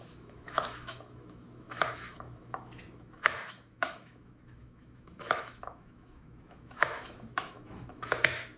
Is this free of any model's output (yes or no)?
no